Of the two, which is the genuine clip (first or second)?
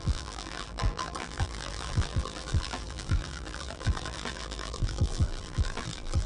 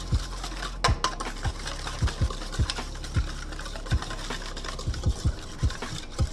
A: second